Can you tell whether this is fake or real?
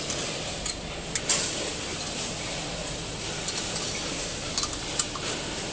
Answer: real